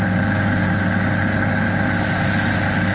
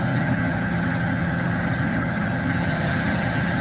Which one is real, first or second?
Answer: first